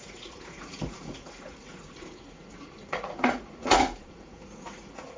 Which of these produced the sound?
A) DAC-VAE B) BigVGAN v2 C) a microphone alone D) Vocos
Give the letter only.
D